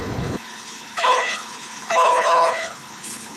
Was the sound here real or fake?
fake